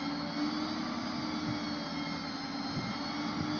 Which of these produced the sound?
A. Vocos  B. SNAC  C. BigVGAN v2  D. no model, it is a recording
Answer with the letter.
D